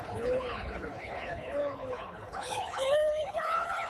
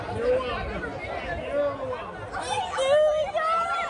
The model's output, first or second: first